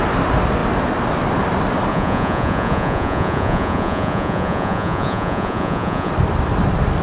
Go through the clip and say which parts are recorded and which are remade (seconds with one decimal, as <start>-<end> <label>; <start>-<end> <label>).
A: 0.0-1.9 recorded; 1.9-6.1 remade; 6.1-7.0 recorded